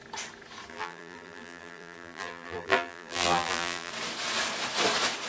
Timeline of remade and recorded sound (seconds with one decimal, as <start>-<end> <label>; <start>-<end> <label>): 0.0-0.7 recorded; 0.7-3.9 remade; 3.9-5.3 recorded